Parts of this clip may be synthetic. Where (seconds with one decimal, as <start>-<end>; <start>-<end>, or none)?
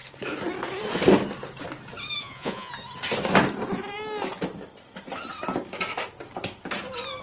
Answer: 2.2-2.7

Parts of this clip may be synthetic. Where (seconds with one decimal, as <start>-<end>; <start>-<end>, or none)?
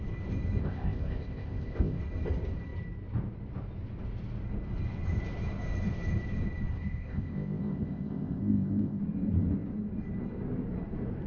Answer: 0.6-2.0; 6.7-9.0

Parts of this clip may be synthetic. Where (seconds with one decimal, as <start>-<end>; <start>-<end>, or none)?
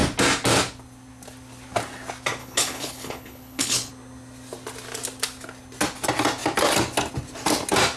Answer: 2.4-3.9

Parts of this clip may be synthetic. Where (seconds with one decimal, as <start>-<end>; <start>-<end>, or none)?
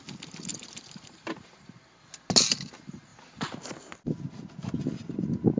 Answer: none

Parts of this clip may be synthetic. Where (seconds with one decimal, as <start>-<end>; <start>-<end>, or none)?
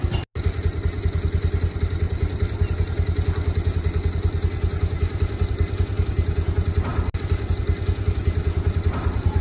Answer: none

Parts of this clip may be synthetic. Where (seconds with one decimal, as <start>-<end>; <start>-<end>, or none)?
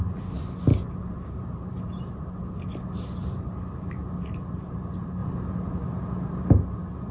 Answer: none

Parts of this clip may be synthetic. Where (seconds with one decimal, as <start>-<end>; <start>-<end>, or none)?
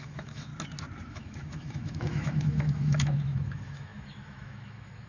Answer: 0.0-0.5; 1.1-5.1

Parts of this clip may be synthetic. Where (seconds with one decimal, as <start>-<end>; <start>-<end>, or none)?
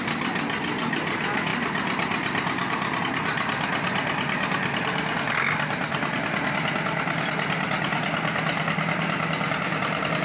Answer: none